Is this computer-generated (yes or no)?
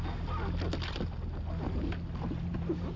no